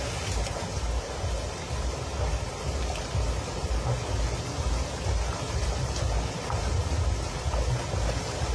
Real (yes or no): yes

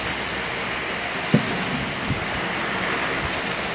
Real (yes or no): yes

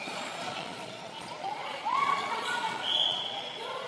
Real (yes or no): no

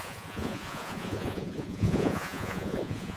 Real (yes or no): no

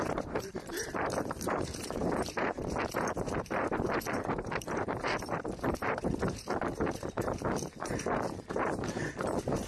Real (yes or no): no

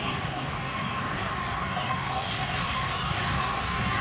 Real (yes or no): no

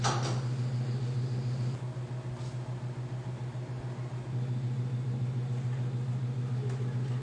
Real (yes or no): yes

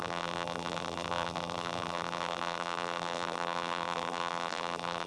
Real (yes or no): no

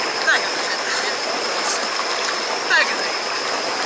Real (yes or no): yes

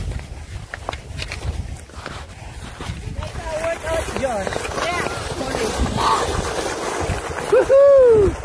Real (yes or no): yes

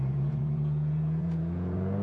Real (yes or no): no